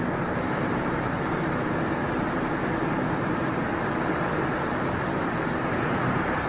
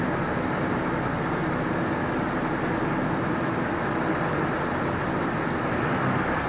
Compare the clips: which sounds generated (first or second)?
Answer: first